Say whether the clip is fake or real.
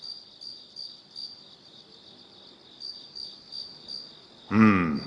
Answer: real